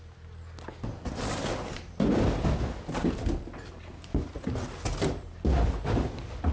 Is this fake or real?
real